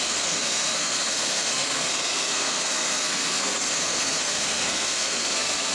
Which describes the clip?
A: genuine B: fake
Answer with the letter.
B